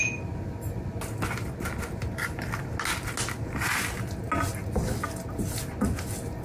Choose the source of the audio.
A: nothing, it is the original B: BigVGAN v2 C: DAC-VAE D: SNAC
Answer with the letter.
A